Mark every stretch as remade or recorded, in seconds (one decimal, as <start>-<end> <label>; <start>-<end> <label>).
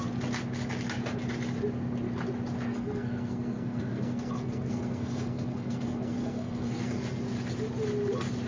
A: 0.0-2.7 recorded; 2.7-7.0 remade; 7.0-8.5 recorded